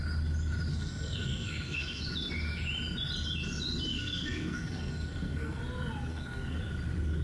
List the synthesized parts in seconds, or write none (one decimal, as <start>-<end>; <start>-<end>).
0.7-2.0; 3.9-5.6; 6.1-6.6